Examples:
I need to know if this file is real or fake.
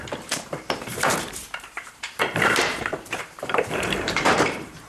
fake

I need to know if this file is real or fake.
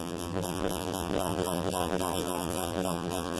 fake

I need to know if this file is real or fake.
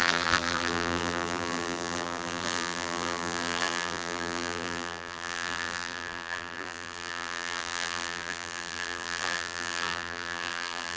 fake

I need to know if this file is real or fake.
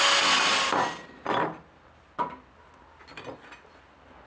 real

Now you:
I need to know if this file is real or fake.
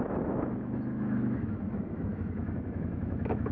fake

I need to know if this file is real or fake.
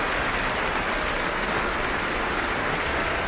real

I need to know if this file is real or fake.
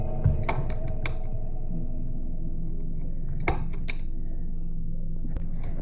real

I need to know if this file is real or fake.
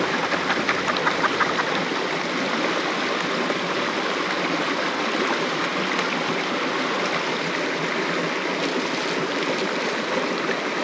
real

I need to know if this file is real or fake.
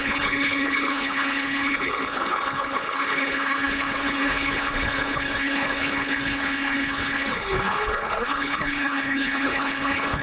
fake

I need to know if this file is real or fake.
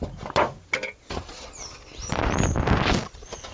real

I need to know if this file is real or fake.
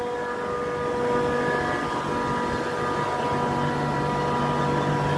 real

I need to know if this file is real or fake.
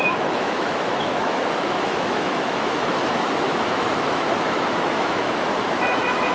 fake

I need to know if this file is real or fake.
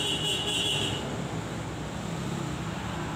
real